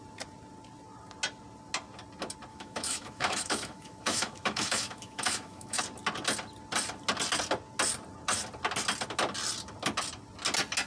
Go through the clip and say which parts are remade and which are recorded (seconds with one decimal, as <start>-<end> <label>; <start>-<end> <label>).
0.0-2.5 recorded; 2.5-5.8 remade; 5.8-10.9 recorded